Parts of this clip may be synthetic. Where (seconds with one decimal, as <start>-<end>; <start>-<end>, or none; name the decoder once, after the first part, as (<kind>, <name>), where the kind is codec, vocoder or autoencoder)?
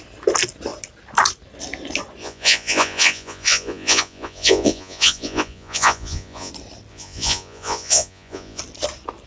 2.2-6.5 (vocoder, Vocos); 6.9-8.6